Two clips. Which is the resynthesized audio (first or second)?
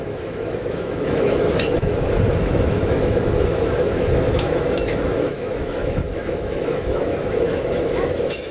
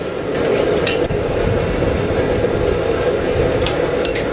first